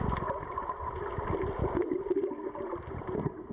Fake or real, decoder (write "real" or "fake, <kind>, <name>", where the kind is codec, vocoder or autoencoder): real